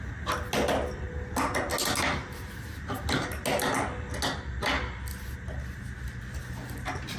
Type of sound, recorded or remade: recorded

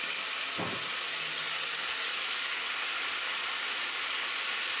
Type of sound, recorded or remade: recorded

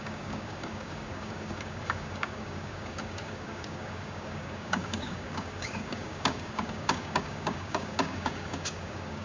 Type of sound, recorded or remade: remade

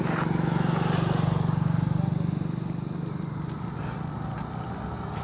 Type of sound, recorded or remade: recorded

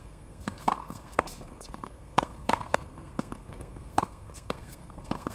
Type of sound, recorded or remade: remade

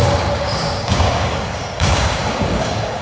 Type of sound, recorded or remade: remade